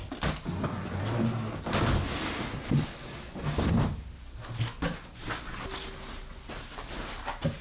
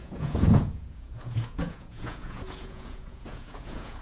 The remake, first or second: second